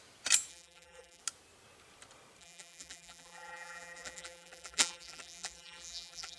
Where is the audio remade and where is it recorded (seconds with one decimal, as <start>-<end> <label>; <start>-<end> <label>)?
0.0-0.5 recorded; 0.5-1.2 remade; 1.2-2.4 recorded; 2.4-6.4 remade